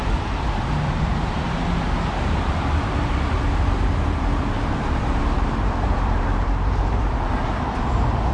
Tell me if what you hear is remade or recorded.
remade